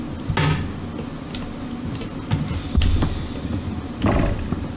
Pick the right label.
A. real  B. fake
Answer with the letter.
A